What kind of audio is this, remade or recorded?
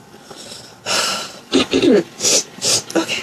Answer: recorded